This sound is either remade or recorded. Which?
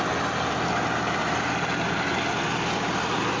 recorded